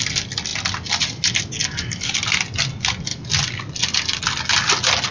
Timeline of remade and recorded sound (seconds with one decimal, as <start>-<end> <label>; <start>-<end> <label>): 0.0-5.1 recorded

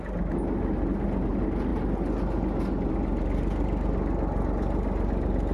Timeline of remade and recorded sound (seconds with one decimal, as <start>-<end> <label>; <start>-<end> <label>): 0.0-5.5 recorded

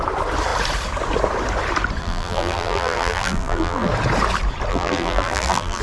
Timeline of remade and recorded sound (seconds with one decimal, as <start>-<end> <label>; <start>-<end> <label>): 0.0-2.0 recorded; 2.0-3.9 remade; 3.9-4.7 recorded; 4.7-5.8 remade

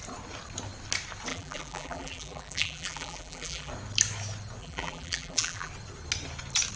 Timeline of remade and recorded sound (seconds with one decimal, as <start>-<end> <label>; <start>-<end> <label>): 0.0-1.3 recorded; 1.3-3.7 remade; 3.7-4.6 recorded; 4.6-5.7 remade; 5.7-6.8 recorded

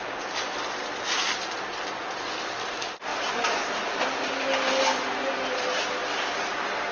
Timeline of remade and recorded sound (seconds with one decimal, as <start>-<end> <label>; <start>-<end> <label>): 0.0-3.1 recorded; 3.1-4.5 remade; 4.5-6.9 recorded

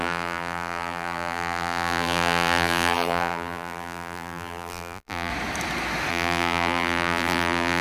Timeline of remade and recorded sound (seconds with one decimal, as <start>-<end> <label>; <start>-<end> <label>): 0.0-5.3 remade; 5.3-6.1 recorded; 6.1-7.8 remade

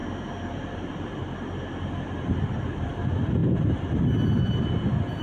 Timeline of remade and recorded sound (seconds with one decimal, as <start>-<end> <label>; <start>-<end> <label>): 0.0-3.4 recorded; 3.4-3.9 remade; 3.9-5.2 recorded